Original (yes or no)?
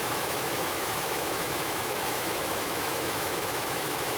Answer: no